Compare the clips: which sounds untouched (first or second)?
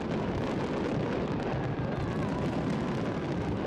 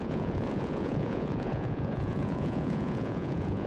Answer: first